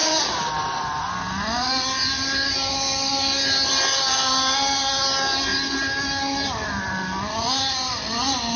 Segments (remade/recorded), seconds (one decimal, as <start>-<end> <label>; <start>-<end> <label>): 0.0-8.6 recorded